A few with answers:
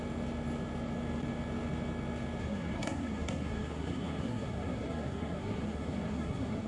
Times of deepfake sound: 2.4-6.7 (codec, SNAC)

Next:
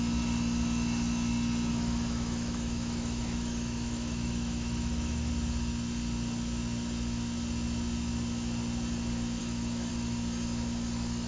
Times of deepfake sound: 1.7-5.3 (autoencoder, DAC-VAE); 9.4-9.9

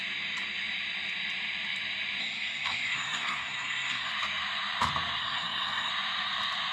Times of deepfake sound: 2.2-4.1 (codec, SNAC); 5.2-5.9

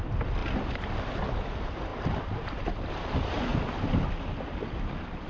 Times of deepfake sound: 1.9-2.9 (vocoder, BigVGAN v2); 3.5-5.3

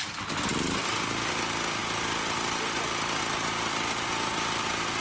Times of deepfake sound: none